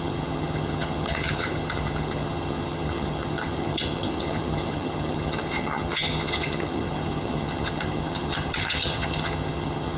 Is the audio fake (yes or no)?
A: yes